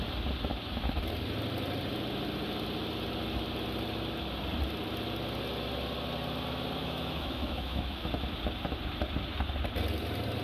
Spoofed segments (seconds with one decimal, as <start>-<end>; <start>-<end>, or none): 0.5-1.0; 6.8-8.1